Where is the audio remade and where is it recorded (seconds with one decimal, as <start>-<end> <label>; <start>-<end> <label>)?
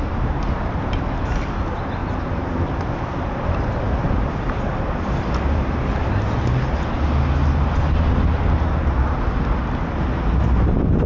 0.0-2.0 recorded; 2.0-2.9 remade; 2.9-11.1 recorded